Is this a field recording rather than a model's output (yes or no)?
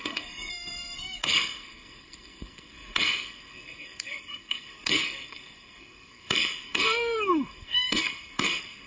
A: no